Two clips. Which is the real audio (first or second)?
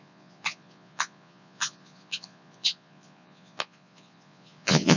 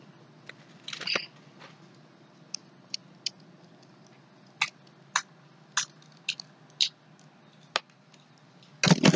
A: second